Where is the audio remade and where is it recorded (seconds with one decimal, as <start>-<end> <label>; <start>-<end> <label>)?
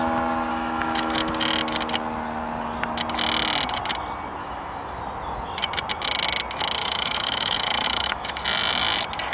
0.0-0.5 recorded; 0.5-1.3 remade; 1.3-4.4 recorded; 4.4-5.0 remade; 5.0-6.8 recorded; 6.8-8.4 remade; 8.4-9.3 recorded